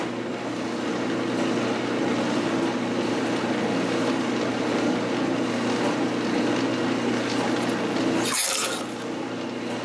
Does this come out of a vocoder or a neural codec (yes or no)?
no